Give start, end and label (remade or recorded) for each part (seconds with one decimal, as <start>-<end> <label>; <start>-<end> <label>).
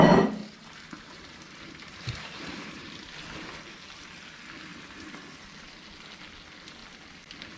0.0-0.4 recorded; 0.4-2.9 remade; 2.9-7.6 recorded